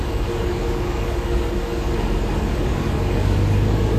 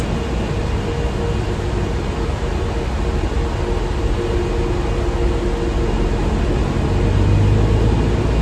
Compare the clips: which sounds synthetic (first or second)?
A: first